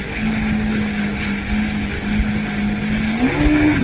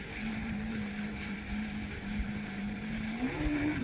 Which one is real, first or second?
first